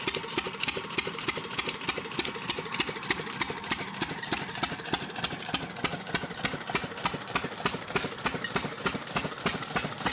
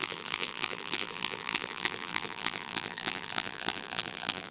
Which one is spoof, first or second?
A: second